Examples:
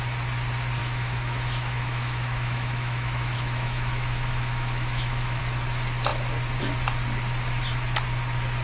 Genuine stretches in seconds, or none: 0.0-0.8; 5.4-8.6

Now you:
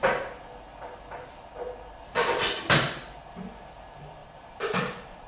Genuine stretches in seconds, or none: 0.0-4.2

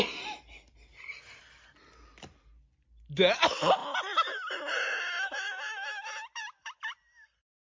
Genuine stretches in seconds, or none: 0.0-7.6

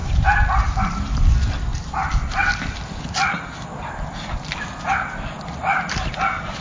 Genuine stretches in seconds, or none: 0.0-6.6

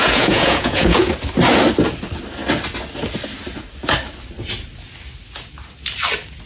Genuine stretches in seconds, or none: 1.1-6.5

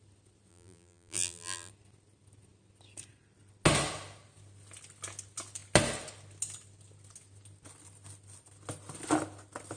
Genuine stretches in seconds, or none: 0.0-0.5; 1.7-9.8

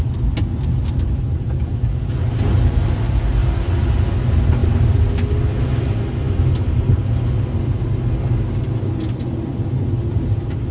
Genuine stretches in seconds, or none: 0.0-10.7

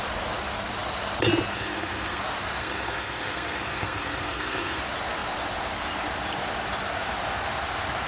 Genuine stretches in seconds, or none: 0.0-1.5; 2.2-2.6; 4.8-8.1